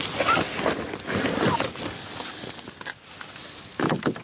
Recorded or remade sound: recorded